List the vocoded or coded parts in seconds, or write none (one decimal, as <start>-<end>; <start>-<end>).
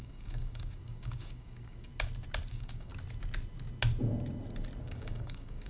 0.0-1.9; 2.5-2.9; 4.8-5.7